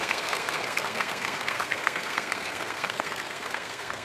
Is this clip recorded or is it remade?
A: remade